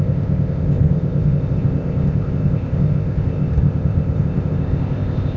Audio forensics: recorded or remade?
remade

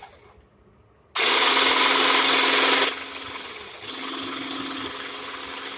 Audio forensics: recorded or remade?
recorded